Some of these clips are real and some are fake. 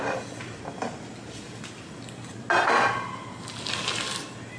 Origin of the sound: real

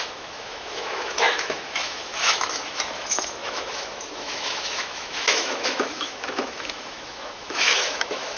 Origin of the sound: fake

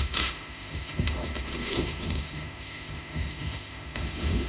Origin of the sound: fake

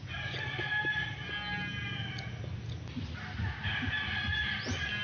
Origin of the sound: real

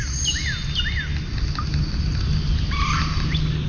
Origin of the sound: real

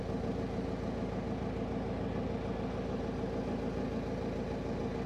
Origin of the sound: real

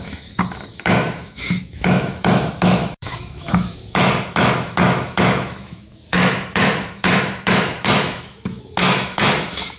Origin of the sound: fake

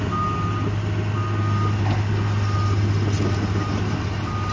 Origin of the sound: real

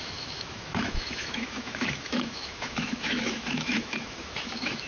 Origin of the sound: fake